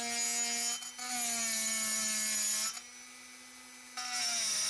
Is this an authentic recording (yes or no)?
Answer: yes